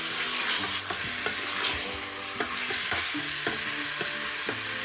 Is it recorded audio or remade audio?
recorded